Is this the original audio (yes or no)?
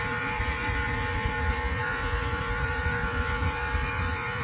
no